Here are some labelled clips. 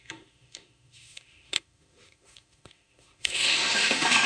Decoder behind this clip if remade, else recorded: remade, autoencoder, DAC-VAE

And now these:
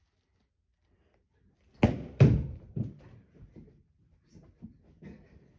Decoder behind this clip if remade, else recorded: recorded